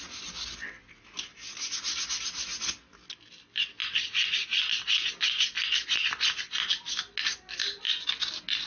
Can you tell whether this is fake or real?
real